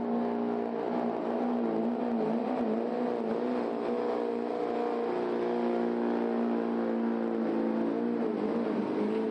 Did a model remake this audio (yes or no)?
no